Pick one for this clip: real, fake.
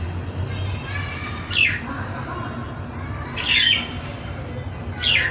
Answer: real